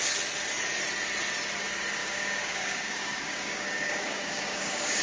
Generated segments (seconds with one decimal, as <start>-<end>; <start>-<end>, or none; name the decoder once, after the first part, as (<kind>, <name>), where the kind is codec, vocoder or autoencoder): 2.0-5.0 (codec, DAC)